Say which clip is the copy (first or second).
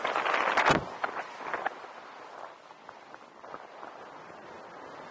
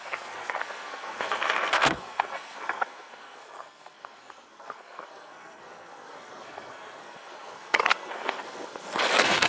second